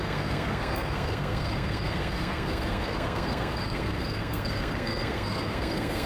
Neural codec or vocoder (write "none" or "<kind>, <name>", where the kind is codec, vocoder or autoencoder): codec, SNAC